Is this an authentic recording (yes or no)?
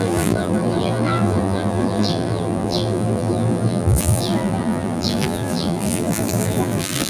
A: no